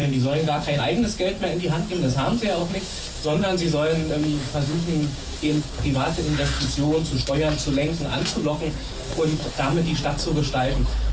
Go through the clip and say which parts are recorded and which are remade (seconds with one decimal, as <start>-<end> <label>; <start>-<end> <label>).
0.0-0.8 remade; 0.8-2.6 recorded; 2.6-7.3 remade; 7.3-8.1 recorded; 8.1-9.5 remade; 9.5-11.1 recorded